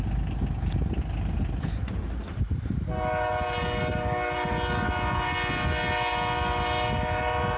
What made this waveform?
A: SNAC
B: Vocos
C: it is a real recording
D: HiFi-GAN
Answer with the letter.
C